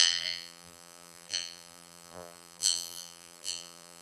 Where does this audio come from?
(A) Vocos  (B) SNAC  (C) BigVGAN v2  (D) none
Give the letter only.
C